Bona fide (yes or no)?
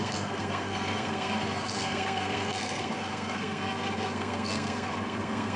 no